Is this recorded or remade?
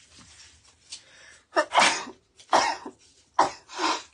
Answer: recorded